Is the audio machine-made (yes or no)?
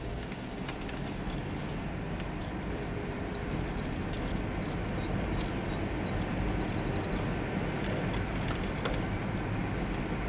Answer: no